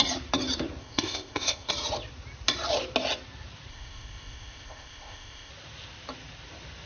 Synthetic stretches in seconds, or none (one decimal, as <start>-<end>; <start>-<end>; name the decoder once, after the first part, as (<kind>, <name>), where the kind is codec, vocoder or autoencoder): 0.8-1.7 (codec, ZipCodec); 3.7-5.5